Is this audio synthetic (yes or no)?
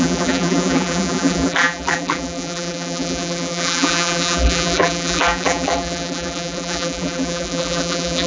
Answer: yes